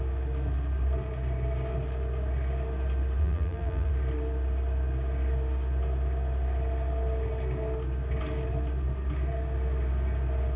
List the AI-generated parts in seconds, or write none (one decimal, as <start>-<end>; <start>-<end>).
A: 3.2-3.9

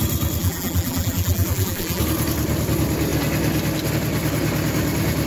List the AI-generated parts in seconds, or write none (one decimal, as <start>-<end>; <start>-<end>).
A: 0.4-2.0

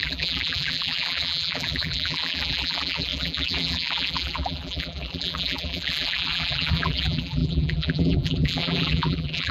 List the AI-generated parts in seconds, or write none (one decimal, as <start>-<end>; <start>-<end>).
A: 0.0-9.5